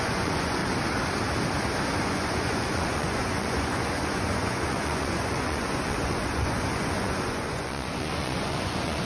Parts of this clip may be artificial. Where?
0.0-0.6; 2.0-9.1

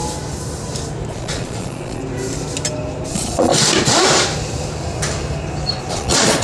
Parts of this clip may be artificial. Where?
1.1-2.0; 3.1-3.5; 5.9-6.4

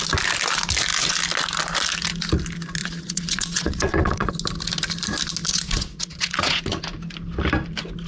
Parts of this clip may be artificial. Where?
2.8-4.3; 5.5-6.6

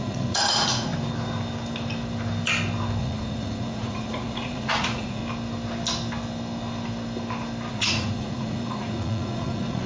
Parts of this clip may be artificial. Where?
0.0-0.9; 3.0-5.2; 7.7-9.9

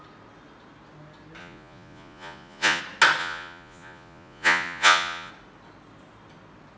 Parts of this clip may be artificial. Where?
1.4-2.8; 3.2-5.3

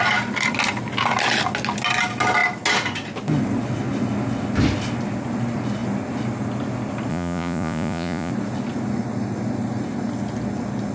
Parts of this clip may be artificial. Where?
7.1-8.3

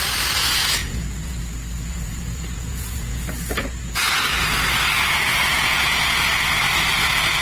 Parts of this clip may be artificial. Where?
0.8-1.4; 1.9-4.0; 5.3-6.2

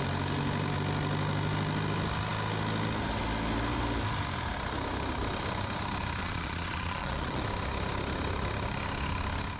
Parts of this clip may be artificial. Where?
6.2-7.4